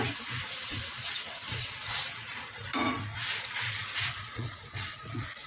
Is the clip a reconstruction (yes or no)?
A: yes